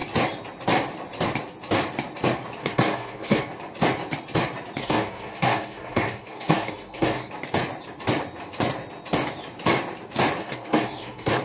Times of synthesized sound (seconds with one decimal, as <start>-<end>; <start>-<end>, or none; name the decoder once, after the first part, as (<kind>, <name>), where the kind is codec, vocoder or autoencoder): 2.6-3.4 (codec, SNAC); 4.8-7.3; 10.4-11.4